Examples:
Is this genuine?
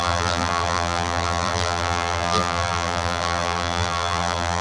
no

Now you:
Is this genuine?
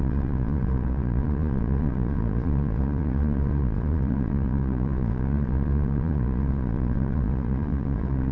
no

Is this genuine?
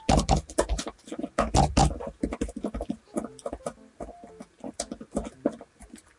yes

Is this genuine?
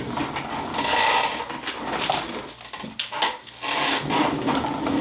yes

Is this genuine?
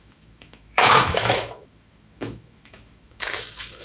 no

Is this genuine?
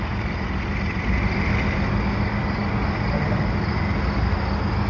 yes